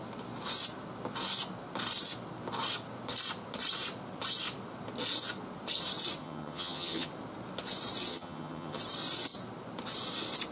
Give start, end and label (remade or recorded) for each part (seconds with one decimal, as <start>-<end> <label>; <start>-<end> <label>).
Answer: 0.0-6.2 recorded; 6.2-7.1 remade; 7.1-8.1 recorded; 8.1-8.8 remade; 8.8-10.5 recorded